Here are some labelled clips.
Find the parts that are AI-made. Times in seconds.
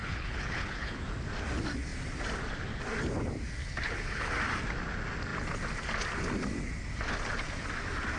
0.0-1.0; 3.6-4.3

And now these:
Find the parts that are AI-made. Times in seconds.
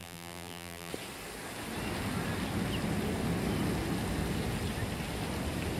0.0-0.9